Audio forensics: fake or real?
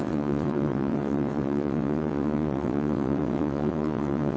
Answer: fake